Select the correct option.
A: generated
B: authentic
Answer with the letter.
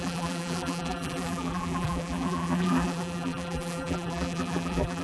A